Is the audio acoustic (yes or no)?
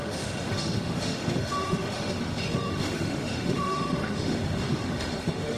no